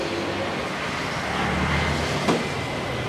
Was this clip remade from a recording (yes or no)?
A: no